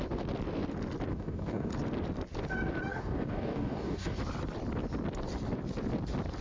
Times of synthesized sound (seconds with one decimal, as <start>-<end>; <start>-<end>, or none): 1.1-1.7; 2.9-4.2